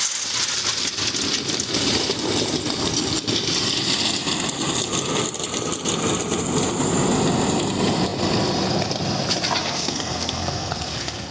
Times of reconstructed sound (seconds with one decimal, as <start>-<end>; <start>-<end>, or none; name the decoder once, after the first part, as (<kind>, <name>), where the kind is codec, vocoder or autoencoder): 9.6-11.3 (codec, SNAC)